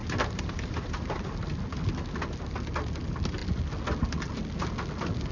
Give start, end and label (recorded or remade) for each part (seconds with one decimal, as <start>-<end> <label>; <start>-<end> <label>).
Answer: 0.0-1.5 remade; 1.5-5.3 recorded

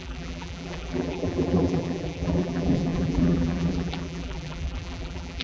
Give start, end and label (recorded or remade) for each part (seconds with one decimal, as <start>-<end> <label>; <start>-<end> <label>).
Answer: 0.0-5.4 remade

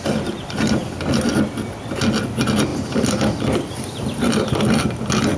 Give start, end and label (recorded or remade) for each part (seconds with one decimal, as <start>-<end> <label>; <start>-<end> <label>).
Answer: 0.0-2.7 recorded; 2.7-4.6 remade; 4.6-5.4 recorded

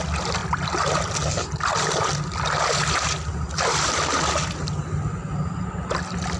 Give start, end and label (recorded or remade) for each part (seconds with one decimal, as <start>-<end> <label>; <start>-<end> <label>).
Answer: 0.0-6.4 recorded

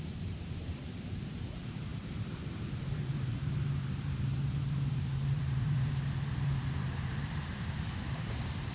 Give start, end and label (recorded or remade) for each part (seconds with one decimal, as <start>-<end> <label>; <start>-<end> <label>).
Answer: 0.0-8.7 remade